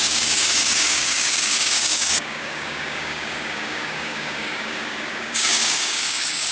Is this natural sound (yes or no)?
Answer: no